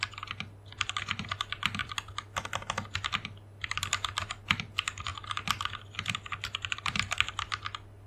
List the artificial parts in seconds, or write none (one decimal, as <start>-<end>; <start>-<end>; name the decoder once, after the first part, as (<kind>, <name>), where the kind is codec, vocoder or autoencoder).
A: none